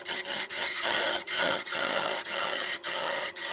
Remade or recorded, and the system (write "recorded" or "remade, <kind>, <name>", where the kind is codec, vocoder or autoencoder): remade, vocoder, HiFi-GAN